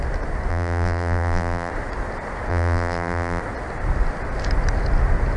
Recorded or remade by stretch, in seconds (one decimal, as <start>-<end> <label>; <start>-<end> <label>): 0.0-0.5 recorded; 0.5-1.7 remade; 1.7-2.5 recorded; 2.5-3.4 remade; 3.4-5.4 recorded